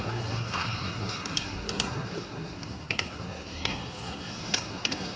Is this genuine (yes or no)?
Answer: no